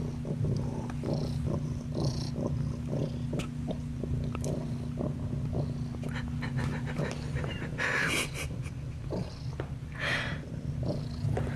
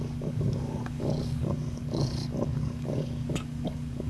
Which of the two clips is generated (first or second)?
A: second